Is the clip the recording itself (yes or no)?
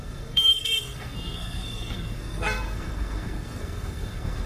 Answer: no